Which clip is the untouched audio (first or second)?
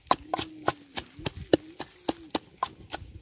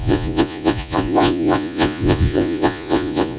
first